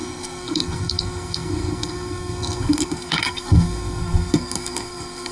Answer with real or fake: fake